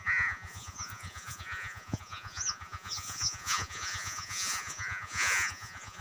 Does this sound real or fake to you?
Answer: fake